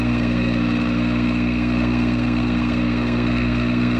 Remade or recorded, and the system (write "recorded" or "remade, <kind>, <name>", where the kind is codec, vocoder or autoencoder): remade, codec, SNAC